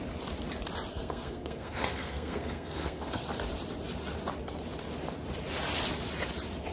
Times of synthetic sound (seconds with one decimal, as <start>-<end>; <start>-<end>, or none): 0.9-3.2